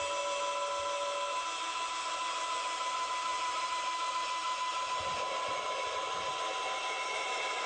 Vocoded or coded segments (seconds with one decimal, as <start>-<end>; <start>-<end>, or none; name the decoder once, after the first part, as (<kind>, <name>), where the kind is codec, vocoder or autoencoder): 3.3-4.1 (vocoder, BigVGAN v2)